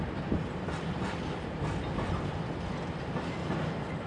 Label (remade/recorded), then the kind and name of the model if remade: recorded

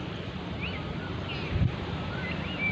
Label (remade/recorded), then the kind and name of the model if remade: recorded